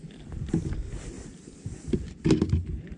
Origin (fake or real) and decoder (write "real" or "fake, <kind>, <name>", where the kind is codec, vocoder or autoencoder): real